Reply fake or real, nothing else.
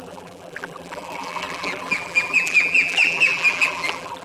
fake